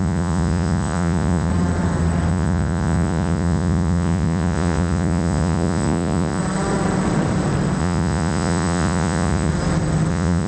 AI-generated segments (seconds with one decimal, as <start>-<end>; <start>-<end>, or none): 0.0-1.5; 2.3-6.4; 7.8-9.5; 10.1-10.5